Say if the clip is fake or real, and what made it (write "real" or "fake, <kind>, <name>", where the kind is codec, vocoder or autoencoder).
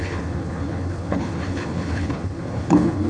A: fake, codec, HILCodec